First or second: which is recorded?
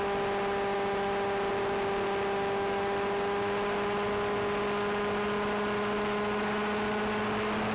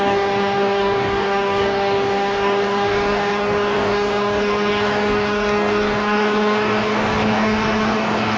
first